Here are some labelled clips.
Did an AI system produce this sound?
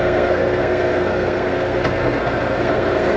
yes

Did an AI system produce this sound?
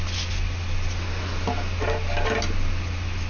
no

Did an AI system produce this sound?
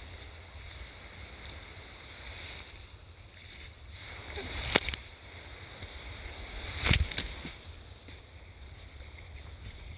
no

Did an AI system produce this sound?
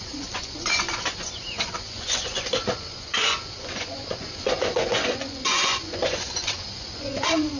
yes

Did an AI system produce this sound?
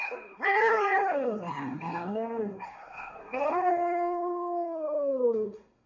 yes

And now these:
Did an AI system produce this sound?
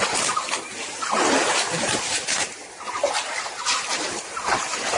no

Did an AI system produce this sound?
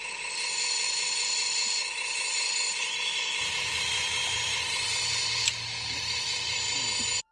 no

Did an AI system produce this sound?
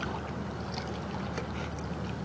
no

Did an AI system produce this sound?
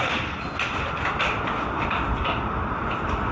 no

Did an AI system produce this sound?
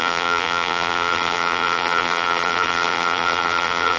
yes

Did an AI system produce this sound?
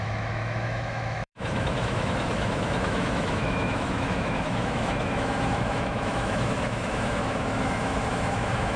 yes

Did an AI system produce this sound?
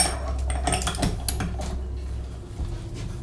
no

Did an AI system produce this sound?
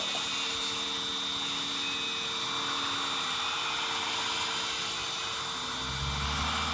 no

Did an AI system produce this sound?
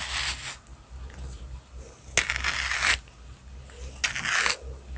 no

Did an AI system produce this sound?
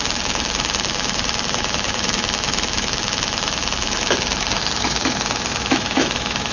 yes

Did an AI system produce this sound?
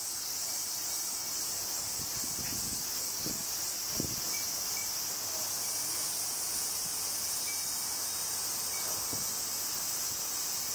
no